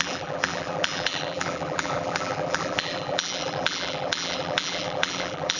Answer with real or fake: fake